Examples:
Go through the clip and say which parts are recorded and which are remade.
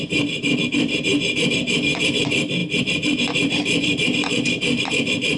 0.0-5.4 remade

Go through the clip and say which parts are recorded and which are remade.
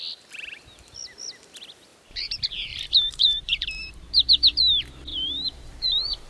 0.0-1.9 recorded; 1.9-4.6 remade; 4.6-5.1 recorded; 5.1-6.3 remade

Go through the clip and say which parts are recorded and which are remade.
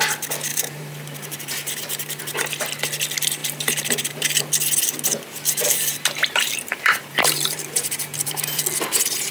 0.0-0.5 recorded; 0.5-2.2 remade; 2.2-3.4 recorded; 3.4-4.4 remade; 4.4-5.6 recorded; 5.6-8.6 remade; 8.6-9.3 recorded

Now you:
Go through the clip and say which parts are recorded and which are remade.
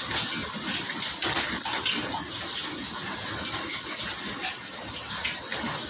0.0-5.9 recorded